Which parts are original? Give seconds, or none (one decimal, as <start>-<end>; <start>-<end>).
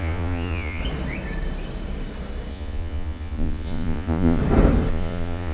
0.8-2.5; 4.4-4.9